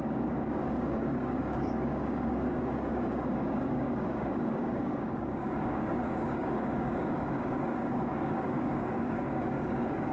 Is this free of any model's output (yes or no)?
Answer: no